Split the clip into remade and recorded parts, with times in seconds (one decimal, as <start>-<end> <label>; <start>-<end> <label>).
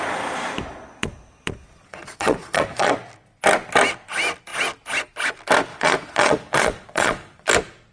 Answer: 0.0-0.7 recorded; 0.7-3.0 remade; 3.0-5.7 recorded; 5.7-7.5 remade; 7.5-7.9 recorded